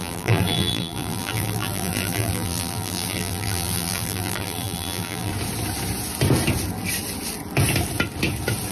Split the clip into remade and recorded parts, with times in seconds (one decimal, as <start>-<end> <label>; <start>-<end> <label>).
0.0-5.3 remade; 5.3-8.7 recorded